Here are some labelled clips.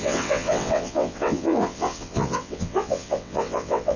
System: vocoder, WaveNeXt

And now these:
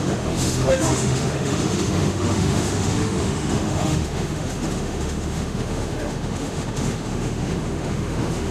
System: autoencoder, DAC-VAE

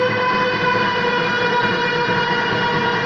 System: none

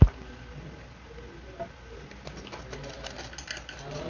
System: none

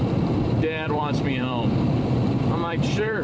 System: vocoder, BigVGAN v2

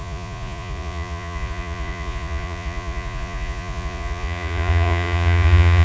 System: vocoder, Vocos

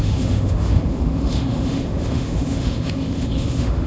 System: autoencoder, DAC-VAE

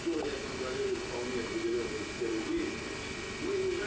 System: none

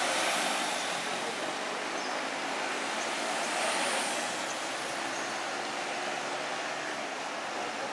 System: none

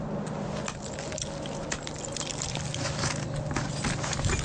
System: none